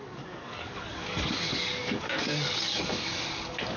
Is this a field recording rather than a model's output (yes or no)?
no